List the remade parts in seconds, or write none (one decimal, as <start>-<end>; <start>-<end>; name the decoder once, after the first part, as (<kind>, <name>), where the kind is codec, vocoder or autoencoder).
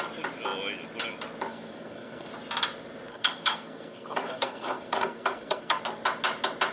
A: 1.5-2.3 (codec, SNAC); 3.1-5.8